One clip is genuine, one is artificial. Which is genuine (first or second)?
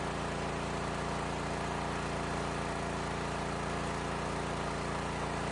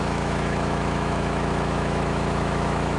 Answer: first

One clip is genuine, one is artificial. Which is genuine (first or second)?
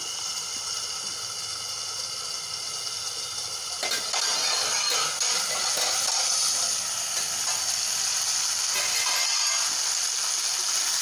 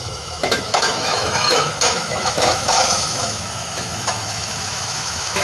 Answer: first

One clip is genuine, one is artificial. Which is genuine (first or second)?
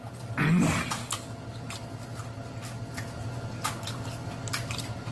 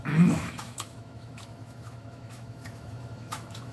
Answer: first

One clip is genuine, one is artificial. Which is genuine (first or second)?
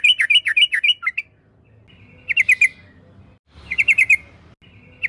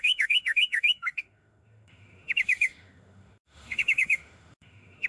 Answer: first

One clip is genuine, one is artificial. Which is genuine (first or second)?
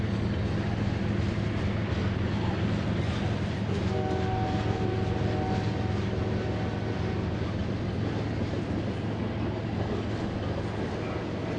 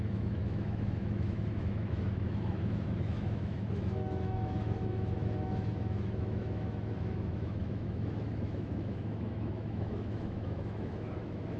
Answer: first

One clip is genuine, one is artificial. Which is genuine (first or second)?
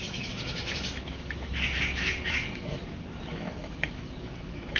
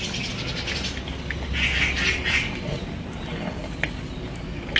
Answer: second